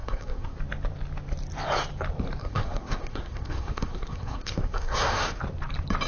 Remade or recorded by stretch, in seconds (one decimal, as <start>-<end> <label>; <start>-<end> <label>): 0.0-0.6 remade; 0.6-2.4 recorded; 2.4-5.4 remade; 5.4-6.1 recorded